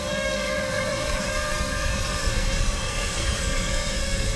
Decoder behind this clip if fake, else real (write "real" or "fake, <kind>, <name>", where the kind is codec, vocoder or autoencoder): fake, codec, SNAC